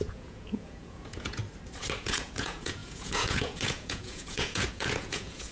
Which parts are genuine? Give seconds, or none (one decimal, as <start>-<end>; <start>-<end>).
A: 1.4-2.0